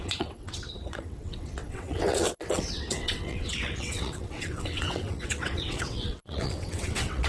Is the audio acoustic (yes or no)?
no